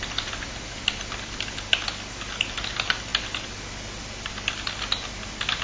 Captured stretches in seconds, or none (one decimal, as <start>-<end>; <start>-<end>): 0.0-5.6